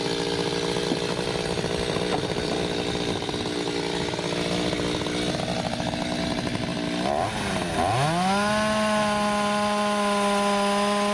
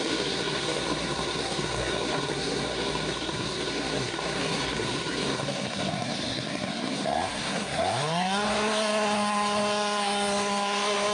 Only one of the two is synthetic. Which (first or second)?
second